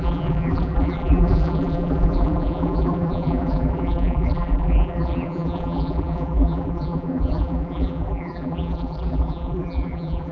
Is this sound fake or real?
fake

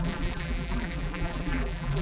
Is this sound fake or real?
fake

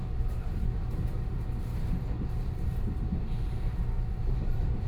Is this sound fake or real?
fake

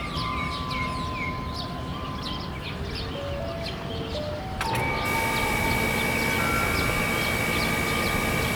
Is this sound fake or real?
real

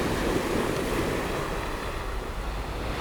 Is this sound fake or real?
fake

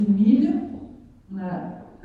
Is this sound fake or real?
real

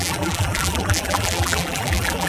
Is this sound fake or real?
fake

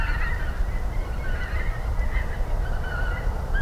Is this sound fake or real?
fake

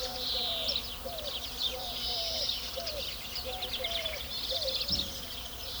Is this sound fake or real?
fake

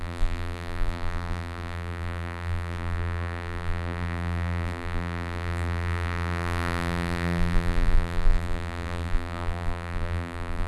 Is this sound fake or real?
fake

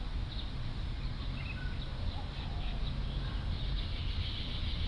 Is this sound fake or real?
real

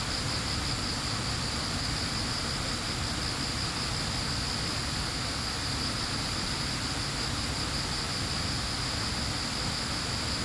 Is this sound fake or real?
real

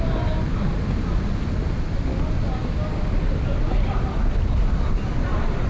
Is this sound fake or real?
real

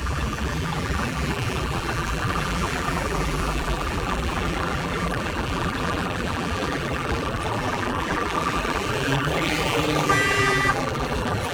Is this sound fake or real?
fake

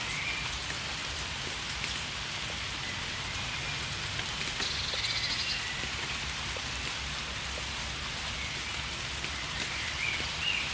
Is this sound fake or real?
real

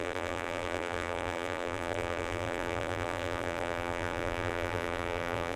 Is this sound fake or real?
fake